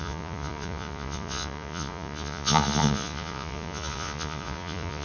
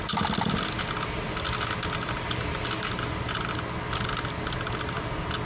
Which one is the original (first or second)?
second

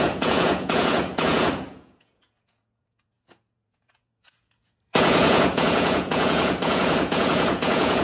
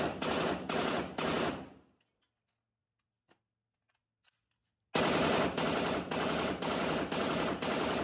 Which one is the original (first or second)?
second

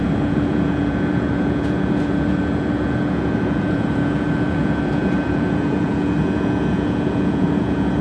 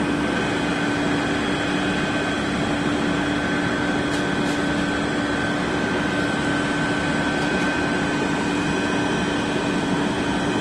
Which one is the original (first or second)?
second